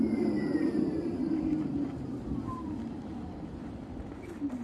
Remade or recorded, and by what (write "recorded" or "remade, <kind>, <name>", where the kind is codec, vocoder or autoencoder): remade, vocoder, BigVGAN v2